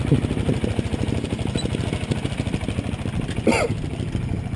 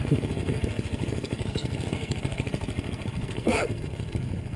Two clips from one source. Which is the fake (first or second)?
second